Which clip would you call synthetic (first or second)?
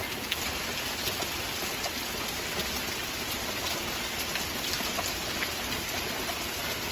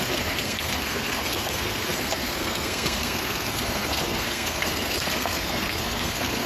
second